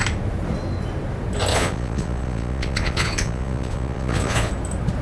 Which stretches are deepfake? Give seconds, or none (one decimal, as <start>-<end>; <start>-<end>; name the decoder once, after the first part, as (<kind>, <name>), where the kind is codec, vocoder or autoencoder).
1.5-4.5 (vocoder, Vocos)